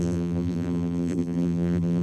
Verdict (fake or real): fake